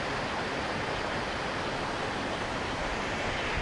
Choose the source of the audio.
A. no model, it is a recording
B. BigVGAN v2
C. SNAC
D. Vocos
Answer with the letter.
A